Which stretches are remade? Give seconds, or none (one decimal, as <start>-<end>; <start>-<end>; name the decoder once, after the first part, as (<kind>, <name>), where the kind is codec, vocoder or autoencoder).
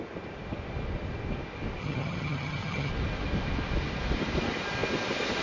1.8-2.9 (vocoder, HiFi-GAN)